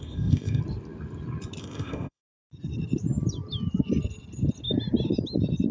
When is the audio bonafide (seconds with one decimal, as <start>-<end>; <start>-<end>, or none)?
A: 0.6-1.6; 2.2-5.7